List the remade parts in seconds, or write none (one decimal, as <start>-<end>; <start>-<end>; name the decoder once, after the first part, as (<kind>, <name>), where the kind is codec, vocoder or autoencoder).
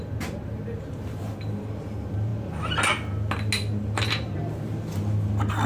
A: none